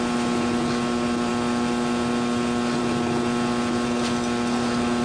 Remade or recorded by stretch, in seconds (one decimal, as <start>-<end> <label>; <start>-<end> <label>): 0.0-5.0 recorded